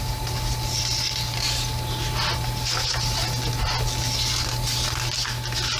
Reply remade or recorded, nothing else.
recorded